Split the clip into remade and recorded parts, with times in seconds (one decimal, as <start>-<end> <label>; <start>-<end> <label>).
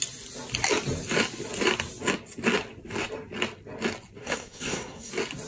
0.0-4.2 recorded; 4.2-5.1 remade; 5.1-5.5 recorded